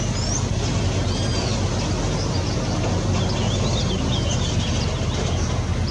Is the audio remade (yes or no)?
no